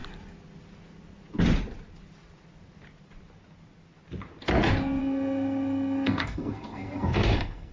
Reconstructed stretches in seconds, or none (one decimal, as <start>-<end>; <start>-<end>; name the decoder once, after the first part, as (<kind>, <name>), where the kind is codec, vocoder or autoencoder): 5.0-7.7 (codec, SNAC)

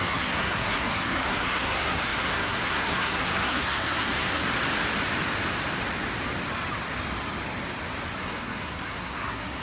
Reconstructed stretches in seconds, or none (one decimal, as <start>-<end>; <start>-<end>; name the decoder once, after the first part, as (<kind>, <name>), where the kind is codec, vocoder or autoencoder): 0.0-4.4 (codec, SNAC); 8.2-9.6

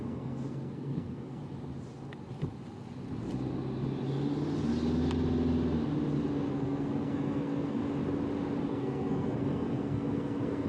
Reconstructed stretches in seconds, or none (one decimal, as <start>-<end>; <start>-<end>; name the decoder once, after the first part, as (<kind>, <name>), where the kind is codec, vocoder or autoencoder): 0.0-1.4 (codec, SNAC); 6.5-7.8; 8.7-10.7

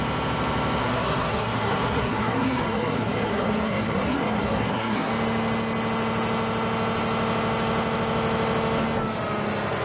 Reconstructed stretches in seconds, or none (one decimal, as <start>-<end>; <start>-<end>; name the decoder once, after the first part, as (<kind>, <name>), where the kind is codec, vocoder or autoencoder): 0.8-5.1 (codec, SNAC)

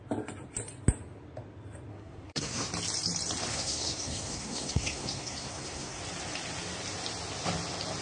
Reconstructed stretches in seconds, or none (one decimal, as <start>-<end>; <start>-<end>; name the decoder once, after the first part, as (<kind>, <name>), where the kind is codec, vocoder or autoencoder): 1.9-2.7 (codec, SNAC); 3.5-6.0

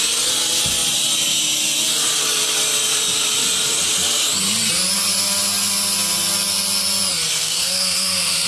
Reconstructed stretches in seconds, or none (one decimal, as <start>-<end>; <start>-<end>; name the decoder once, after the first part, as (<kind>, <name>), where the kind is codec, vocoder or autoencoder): 7.3-8.5 (codec, SNAC)

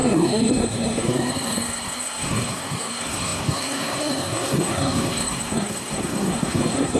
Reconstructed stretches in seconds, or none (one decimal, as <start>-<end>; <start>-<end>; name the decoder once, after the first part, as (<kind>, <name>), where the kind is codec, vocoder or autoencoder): 0.0-7.0 (codec, SNAC)

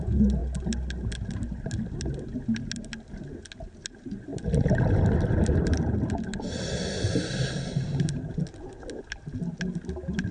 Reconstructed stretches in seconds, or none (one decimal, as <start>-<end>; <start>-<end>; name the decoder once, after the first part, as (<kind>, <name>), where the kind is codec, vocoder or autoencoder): none